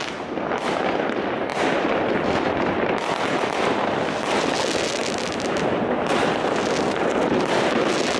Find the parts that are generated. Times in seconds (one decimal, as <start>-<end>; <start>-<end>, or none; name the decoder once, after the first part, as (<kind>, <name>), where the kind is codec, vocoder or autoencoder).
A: none